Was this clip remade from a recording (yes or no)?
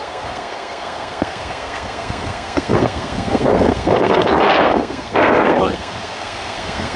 yes